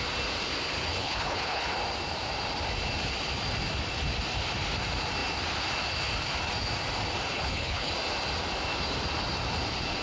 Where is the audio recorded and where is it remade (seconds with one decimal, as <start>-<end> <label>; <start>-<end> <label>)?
0.0-0.9 recorded; 0.9-1.7 remade; 1.7-7.3 recorded; 7.3-7.9 remade; 7.9-10.0 recorded